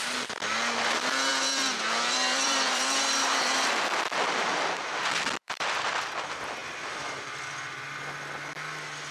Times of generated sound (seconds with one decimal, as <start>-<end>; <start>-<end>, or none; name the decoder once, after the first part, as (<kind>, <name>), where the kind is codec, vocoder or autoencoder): 1.3-6.1 (vocoder, BigVGAN v2); 6.6-7.4